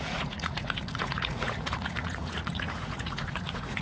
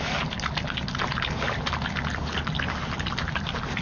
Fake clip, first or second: first